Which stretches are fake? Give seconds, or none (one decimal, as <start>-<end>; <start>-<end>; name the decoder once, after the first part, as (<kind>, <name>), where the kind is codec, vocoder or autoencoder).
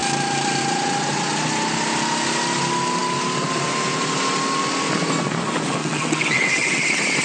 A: 5.8-6.7 (vocoder, WaveNeXt)